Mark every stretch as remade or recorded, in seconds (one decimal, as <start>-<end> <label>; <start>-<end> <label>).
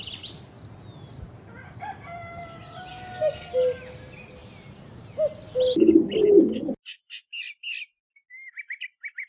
0.0-2.9 recorded; 2.9-3.5 remade; 3.5-9.3 recorded